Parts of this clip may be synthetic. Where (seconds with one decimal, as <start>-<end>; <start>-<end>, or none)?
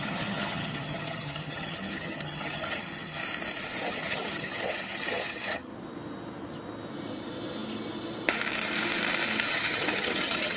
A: 0.0-3.2; 3.9-5.7; 9.5-10.6